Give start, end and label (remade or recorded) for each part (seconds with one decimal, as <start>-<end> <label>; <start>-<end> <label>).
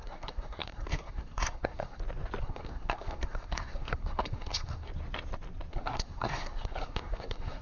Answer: 0.0-2.0 remade; 2.0-2.4 recorded; 2.4-4.9 remade; 4.9-5.7 recorded; 5.7-7.6 remade